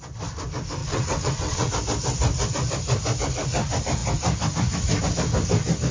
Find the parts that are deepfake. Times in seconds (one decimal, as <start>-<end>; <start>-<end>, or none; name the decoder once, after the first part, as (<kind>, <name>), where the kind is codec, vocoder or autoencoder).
0.8-1.7 (vocoder, WaveNeXt)